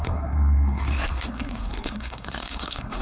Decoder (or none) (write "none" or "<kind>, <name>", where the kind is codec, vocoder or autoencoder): codec, SNAC